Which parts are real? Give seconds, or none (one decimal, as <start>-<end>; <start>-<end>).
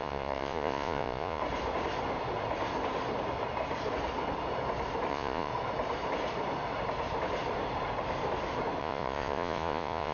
1.4-5.1; 5.5-8.8